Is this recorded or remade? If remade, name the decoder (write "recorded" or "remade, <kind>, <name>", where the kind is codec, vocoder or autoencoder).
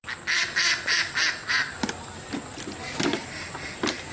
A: recorded